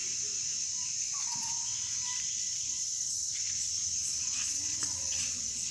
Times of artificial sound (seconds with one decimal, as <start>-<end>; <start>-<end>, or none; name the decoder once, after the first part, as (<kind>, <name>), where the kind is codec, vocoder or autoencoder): 2.4-5.7 (vocoder, Vocos)